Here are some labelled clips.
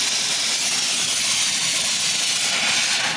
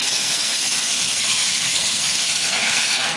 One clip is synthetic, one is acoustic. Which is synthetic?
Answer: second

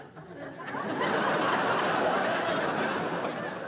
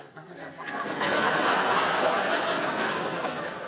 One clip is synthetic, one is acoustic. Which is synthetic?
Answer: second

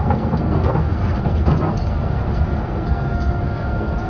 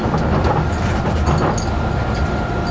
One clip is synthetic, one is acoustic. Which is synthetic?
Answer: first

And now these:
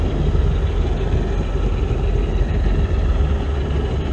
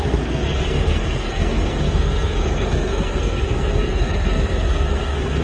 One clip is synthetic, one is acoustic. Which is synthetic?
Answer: second